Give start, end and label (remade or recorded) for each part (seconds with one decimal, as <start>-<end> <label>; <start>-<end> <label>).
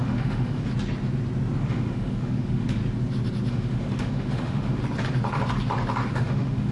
0.0-0.7 remade; 0.7-1.6 recorded; 1.6-2.8 remade; 2.8-3.5 recorded; 3.5-4.8 remade; 4.8-6.1 recorded; 6.1-6.7 remade